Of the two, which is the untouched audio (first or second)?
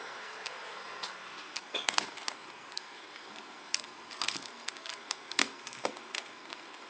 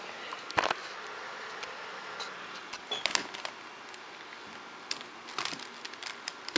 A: second